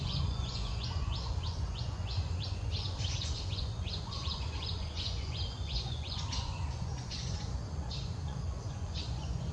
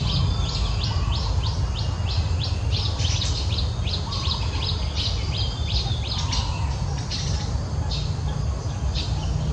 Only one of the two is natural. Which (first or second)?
second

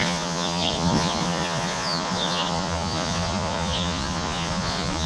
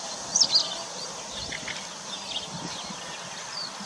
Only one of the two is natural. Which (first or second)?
second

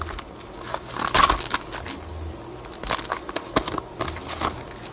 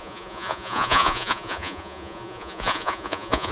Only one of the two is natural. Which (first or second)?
first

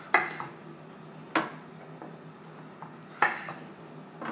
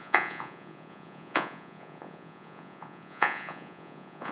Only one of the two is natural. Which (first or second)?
first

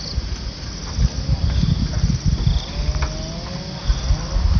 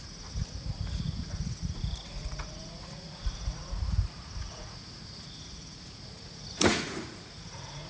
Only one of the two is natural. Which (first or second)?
first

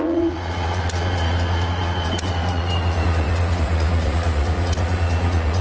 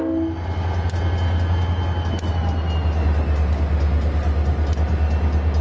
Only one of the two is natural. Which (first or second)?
second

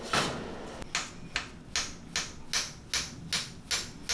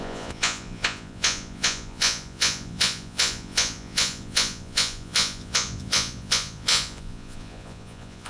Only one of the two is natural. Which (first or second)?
first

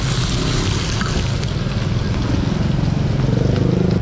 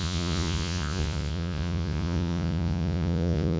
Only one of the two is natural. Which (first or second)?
first